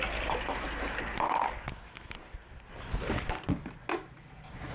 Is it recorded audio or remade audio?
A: recorded